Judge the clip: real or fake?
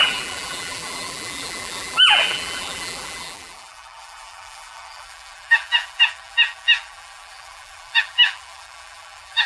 fake